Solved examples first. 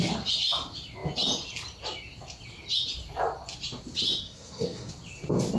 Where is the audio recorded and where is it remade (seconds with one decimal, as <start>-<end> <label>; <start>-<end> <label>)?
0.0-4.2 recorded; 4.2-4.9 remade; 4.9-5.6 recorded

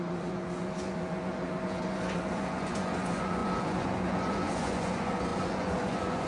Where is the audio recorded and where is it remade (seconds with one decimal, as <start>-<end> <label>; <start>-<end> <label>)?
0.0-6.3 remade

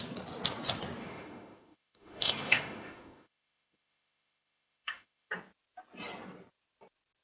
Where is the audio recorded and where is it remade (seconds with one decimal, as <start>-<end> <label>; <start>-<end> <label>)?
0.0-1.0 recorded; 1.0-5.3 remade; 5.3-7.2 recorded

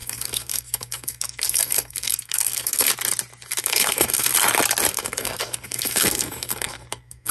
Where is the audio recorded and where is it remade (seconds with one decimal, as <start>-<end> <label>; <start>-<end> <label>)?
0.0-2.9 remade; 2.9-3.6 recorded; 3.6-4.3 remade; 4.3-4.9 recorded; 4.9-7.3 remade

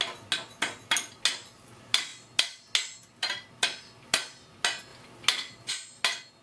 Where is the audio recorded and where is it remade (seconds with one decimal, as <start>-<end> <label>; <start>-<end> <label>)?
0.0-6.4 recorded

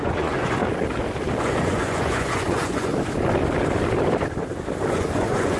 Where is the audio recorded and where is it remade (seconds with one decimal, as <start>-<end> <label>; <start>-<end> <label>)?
0.0-0.6 remade; 0.6-1.4 recorded; 1.4-2.9 remade; 2.9-4.9 recorded; 4.9-5.6 remade

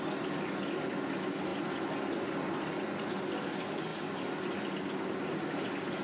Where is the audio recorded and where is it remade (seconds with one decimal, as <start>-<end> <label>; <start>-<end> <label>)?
0.0-6.0 recorded

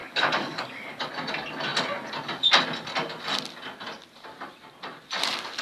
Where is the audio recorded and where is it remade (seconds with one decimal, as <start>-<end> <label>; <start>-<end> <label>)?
0.0-1.1 remade; 1.1-5.6 recorded